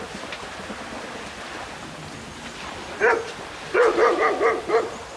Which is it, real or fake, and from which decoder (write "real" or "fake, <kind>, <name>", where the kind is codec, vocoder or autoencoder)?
real